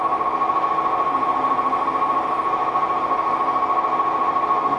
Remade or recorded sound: recorded